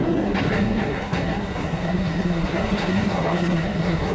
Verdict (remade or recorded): remade